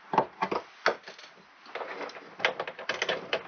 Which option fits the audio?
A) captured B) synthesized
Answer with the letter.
A